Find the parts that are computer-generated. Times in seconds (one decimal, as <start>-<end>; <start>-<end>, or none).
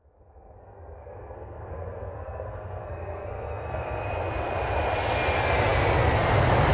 0.0-4.0